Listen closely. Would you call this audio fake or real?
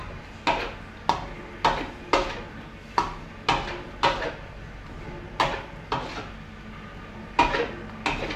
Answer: real